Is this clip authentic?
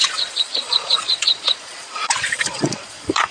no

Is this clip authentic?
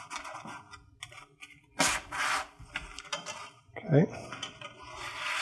yes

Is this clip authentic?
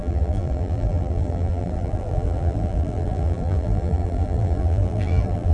no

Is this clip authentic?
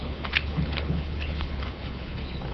no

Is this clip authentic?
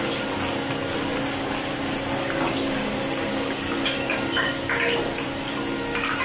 yes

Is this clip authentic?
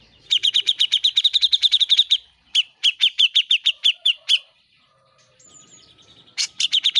no